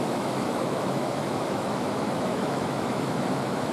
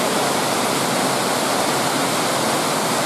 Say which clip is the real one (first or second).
second